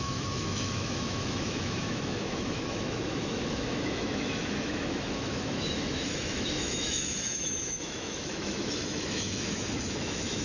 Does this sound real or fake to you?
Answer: fake